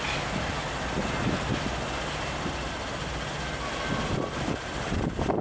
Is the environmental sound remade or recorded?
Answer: recorded